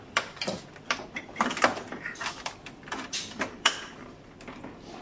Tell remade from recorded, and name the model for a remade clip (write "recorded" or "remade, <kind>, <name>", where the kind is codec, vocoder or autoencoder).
remade, vocoder, BigVGAN v2